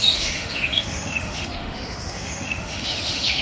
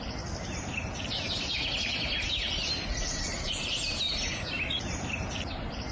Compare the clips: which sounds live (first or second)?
second